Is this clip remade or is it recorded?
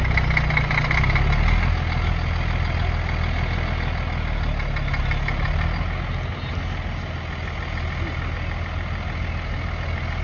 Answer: recorded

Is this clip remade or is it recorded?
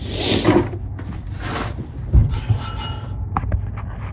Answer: recorded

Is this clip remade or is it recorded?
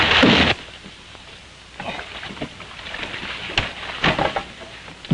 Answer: recorded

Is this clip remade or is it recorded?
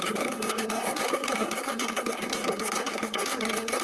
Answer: remade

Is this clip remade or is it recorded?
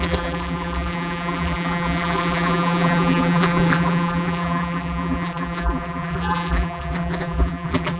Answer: remade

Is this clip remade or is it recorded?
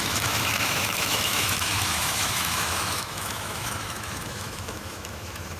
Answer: remade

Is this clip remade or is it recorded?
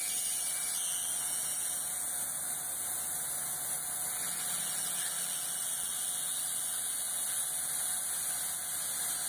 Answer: recorded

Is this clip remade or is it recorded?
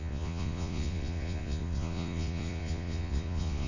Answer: remade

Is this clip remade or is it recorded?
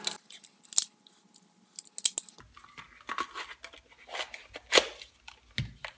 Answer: recorded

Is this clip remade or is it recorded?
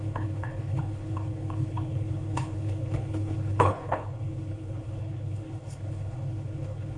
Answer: remade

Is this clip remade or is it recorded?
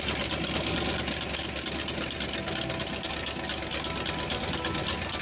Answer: recorded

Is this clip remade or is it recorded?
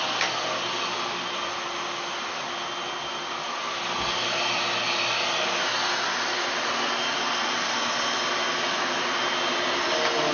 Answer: recorded